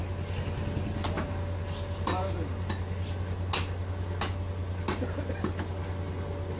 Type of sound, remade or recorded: recorded